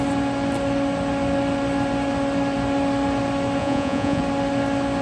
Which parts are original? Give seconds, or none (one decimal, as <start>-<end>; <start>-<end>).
0.0-3.6; 4.2-5.0